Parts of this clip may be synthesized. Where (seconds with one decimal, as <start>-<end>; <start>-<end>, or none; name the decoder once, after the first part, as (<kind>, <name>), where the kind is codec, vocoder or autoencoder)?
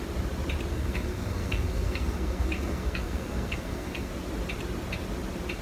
0.7-4.1 (codec, SNAC)